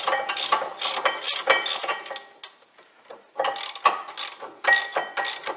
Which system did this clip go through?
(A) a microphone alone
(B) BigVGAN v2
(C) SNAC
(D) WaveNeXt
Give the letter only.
A